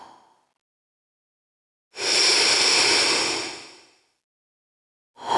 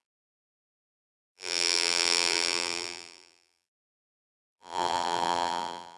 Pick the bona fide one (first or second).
first